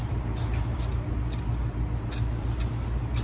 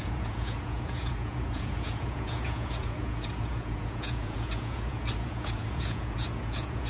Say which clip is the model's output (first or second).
second